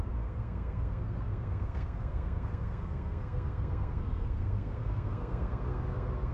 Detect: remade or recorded remade